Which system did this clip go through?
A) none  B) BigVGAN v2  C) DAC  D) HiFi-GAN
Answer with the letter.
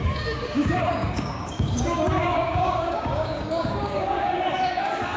C